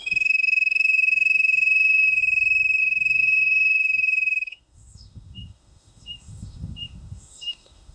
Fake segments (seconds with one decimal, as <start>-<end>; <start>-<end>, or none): 0.0-2.2; 2.8-7.9